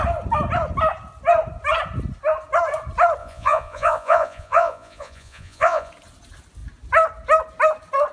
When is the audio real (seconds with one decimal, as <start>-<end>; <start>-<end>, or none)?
0.0-3.2; 5.9-8.1